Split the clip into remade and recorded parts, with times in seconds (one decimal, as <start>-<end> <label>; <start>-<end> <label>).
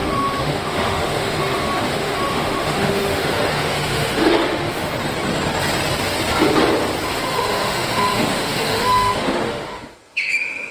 0.0-4.9 remade; 4.9-7.1 recorded; 7.1-10.7 remade